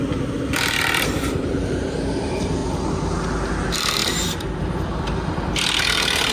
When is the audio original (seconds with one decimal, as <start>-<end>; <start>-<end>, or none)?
2.6-3.5; 4.0-4.6